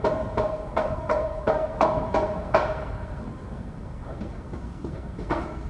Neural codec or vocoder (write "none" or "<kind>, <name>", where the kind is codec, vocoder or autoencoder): codec, SNAC